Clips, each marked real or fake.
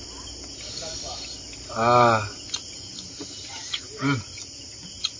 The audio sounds real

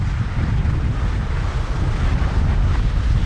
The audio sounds real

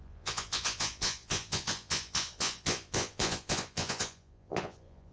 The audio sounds fake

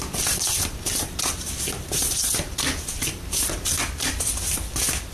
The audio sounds fake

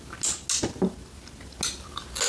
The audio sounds real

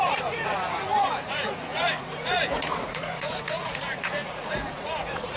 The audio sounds fake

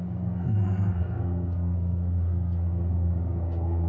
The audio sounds fake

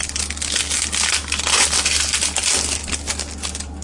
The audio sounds real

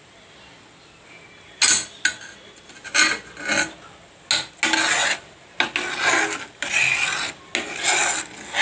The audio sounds real